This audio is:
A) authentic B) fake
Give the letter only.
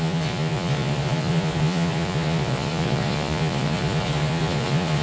B